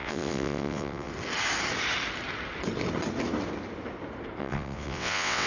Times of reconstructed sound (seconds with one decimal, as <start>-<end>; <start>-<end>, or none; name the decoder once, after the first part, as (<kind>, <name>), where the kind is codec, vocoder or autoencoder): 0.0-1.1 (vocoder, WaveNeXt); 4.4-5.5